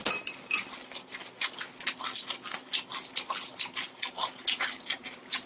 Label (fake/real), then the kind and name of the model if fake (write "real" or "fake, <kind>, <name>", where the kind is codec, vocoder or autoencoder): real